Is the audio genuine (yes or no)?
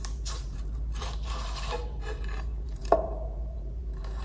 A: no